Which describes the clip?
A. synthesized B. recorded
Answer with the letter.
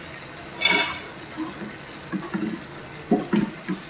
B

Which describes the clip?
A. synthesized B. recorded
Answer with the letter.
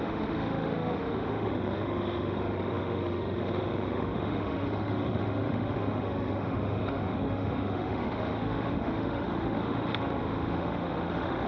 A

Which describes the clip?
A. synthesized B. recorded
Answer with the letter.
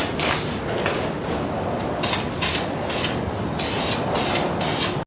B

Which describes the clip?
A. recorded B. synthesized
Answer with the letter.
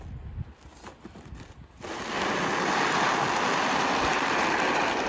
A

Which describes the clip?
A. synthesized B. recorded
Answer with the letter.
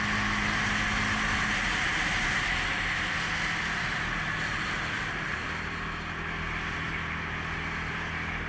B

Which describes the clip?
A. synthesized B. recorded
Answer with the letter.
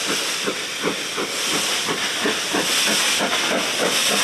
B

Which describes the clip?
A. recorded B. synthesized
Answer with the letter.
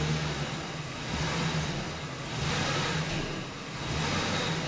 A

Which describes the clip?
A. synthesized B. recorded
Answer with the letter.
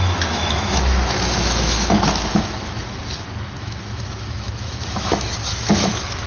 A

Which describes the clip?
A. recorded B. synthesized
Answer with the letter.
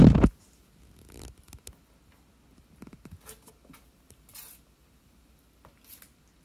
A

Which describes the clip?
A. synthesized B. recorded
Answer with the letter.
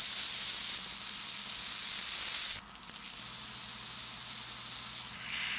B